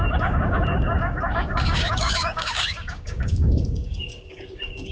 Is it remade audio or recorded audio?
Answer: remade